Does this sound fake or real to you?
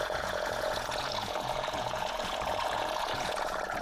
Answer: fake